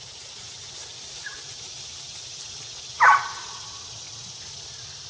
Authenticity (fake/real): real